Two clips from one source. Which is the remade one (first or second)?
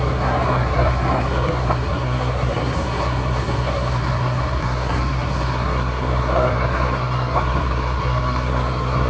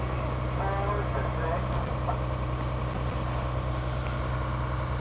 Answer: first